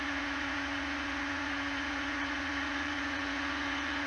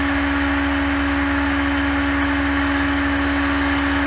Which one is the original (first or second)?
second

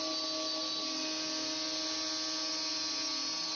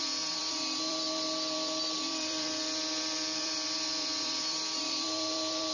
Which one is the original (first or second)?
first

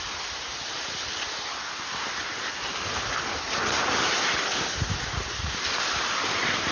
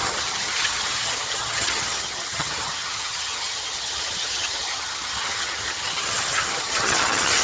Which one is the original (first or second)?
first